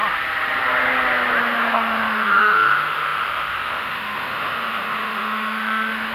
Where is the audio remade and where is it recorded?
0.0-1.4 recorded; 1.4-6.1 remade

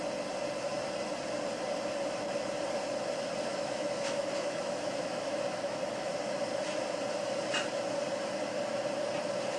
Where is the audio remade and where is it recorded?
0.0-3.5 recorded; 3.5-6.1 remade; 6.1-9.6 recorded

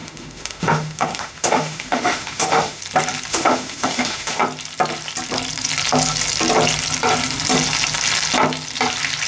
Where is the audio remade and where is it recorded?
0.0-2.8 remade; 2.8-3.3 recorded; 3.3-4.4 remade; 4.4-9.3 recorded